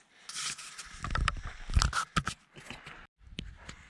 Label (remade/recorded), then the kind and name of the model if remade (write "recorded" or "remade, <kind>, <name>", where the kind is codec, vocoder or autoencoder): recorded